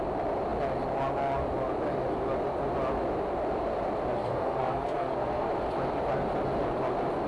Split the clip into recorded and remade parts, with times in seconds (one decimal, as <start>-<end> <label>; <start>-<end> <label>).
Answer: 0.0-4.2 recorded; 4.2-5.5 remade; 5.5-7.3 recorded